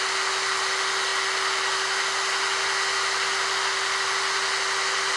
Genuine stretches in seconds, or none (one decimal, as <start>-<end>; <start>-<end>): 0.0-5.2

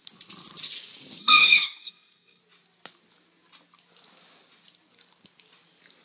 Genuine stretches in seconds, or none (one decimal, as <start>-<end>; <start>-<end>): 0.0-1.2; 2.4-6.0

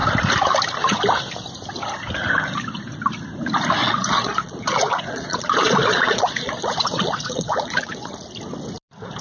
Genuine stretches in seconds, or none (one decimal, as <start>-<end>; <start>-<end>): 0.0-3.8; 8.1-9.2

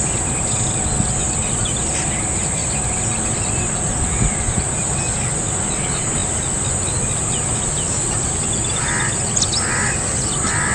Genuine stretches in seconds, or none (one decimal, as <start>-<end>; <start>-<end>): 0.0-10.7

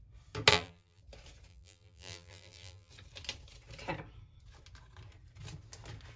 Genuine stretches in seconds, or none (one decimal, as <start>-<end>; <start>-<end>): 0.0-0.5; 1.0-1.5; 2.9-6.2

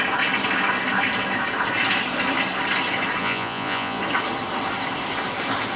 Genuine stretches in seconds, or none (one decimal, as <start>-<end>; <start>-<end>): 0.0-3.2; 4.0-5.8

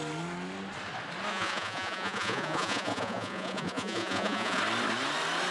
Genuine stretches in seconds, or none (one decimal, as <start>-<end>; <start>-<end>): 0.0-1.3; 4.6-5.5

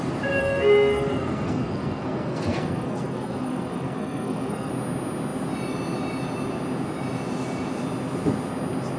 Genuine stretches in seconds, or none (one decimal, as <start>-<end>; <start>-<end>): 0.0-0.4; 4.7-9.0